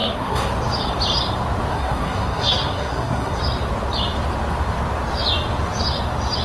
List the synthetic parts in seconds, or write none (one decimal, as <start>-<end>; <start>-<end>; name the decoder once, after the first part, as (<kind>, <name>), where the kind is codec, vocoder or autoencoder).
0.0-0.5 (codec, SNAC); 1.7-3.4